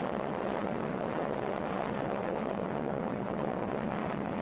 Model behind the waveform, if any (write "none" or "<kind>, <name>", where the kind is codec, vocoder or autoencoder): vocoder, WaveNeXt